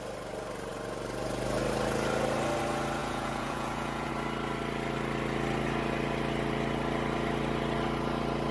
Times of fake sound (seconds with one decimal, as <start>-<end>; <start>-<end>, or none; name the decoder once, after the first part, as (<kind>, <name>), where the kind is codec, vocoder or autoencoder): 3.0-4.1 (vocoder, Vocos)

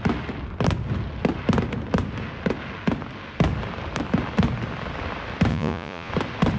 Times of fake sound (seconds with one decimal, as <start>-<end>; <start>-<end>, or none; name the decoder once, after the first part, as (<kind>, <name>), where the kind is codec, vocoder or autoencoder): 5.5-6.1 (vocoder, Vocos)

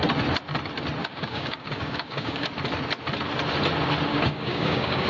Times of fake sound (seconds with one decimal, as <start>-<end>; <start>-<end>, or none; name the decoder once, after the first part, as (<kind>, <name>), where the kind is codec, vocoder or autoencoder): 1.0-2.5 (codec, DAC); 4.1-5.1

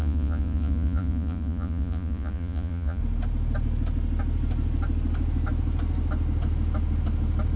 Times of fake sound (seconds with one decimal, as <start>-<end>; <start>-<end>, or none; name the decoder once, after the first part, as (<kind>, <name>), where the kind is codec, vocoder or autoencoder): 0.0-3.0 (vocoder, Vocos)

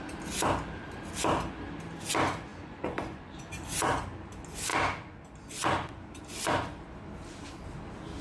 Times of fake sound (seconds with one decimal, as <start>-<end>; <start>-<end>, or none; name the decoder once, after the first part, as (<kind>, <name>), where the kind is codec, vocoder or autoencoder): 2.5-3.4 (vocoder, Vocos)

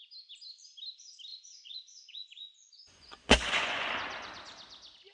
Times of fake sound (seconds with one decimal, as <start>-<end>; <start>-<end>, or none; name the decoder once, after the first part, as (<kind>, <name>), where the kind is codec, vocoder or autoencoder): 1.3-3.9 (vocoder, Vocos)